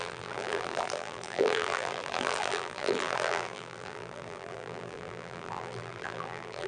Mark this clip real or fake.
fake